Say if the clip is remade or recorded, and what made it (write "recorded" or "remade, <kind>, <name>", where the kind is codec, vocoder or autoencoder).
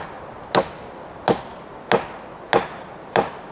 recorded